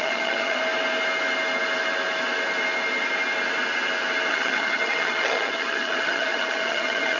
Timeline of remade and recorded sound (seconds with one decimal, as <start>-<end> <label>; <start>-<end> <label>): 0.0-0.6 remade; 0.6-4.3 recorded; 4.3-7.2 remade